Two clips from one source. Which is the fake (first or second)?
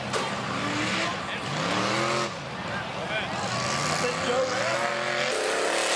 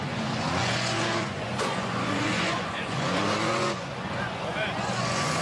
second